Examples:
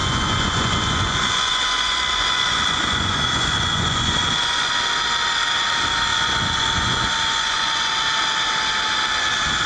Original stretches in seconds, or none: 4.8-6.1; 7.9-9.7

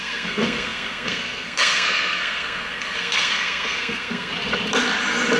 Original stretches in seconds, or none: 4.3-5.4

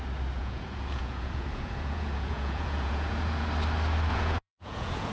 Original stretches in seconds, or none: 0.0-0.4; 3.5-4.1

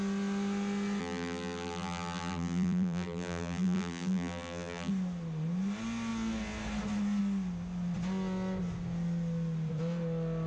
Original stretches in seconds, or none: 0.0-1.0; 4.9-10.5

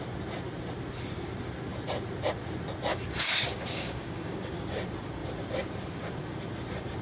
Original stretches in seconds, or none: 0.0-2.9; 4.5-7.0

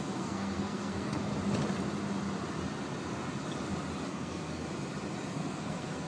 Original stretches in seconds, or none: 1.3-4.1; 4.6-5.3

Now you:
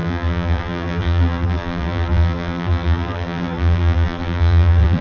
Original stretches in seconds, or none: none